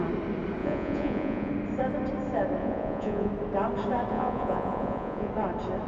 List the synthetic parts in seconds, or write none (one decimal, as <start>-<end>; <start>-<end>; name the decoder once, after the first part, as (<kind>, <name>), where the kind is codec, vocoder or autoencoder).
0.6-1.5 (vocoder, Vocos); 2.6-3.3; 4.1-5.3